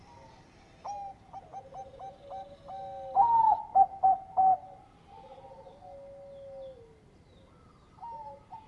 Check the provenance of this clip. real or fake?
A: real